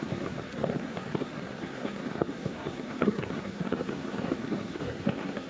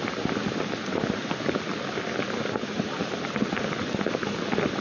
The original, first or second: second